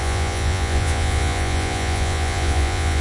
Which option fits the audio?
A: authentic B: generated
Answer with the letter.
B